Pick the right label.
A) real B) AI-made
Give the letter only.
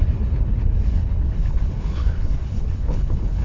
B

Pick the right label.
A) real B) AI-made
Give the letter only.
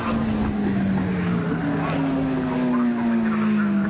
A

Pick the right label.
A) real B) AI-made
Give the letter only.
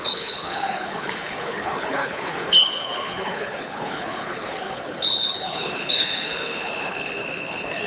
B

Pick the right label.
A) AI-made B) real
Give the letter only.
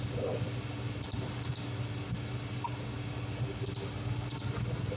B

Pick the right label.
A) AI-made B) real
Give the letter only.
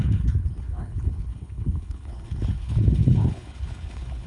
A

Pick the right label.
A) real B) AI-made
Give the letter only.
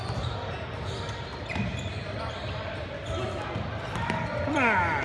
A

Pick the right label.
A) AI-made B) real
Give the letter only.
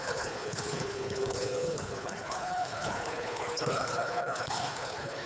A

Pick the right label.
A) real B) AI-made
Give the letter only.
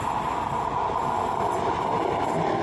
A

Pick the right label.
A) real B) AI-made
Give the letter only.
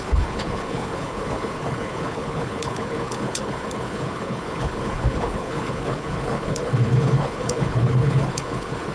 B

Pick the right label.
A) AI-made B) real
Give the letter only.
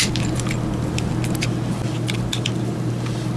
B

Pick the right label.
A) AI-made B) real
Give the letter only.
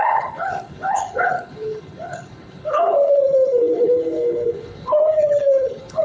A